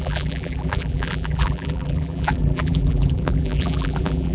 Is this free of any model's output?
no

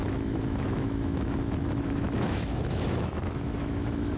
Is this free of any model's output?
no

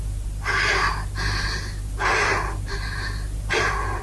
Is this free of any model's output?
yes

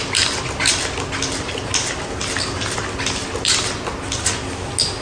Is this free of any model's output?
yes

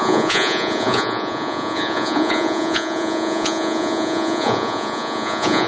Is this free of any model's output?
no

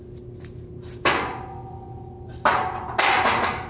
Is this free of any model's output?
yes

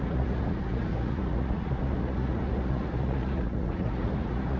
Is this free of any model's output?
no